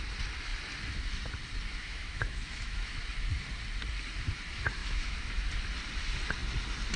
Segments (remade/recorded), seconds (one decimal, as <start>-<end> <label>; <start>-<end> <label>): 0.0-1.8 recorded; 1.8-3.0 remade; 3.0-4.8 recorded; 4.8-5.5 remade; 5.5-7.0 recorded